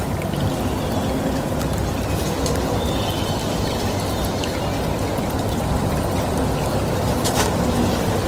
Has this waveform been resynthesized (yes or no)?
no